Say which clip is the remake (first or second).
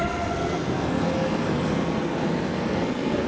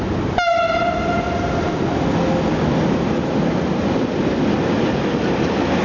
first